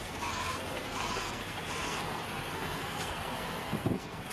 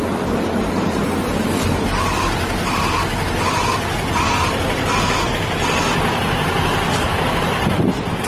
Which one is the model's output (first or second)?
first